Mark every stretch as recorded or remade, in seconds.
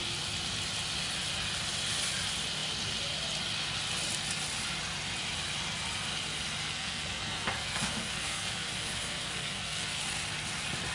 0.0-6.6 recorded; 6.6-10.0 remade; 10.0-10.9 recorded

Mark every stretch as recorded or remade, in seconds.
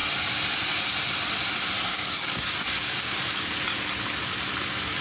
0.0-1.9 recorded; 1.9-3.5 remade; 3.5-5.0 recorded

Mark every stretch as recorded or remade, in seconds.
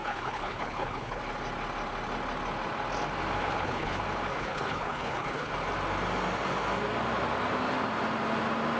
0.0-1.2 remade; 1.2-3.4 recorded; 3.4-4.0 remade; 4.0-4.4 recorded; 4.4-5.5 remade; 5.5-8.8 recorded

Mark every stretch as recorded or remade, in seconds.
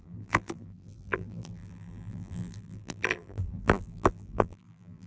0.0-5.1 remade